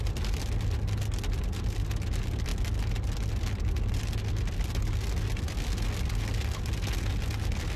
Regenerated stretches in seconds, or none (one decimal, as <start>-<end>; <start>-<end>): none